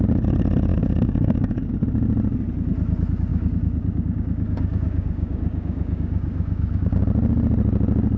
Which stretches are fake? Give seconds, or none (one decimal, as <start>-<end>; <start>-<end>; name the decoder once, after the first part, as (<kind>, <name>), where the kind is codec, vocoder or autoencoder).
0.7-1.7 (codec, DAC); 3.3-7.0